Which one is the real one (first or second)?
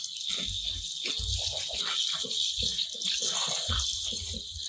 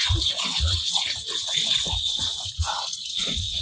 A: first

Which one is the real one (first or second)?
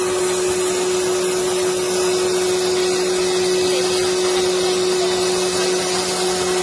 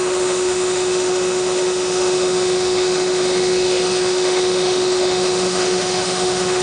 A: first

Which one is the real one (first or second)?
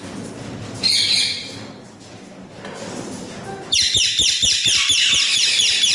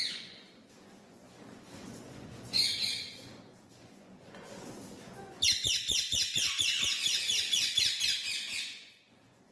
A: first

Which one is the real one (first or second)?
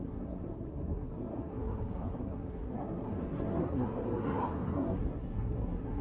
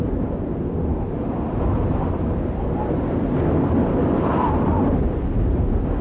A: second